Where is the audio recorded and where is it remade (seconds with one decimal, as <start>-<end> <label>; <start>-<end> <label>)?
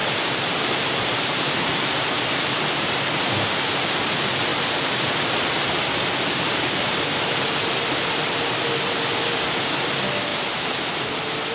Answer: 0.0-2.1 remade; 2.1-4.5 recorded; 4.5-6.1 remade; 6.1-10.3 recorded; 10.3-11.0 remade; 11.0-11.5 recorded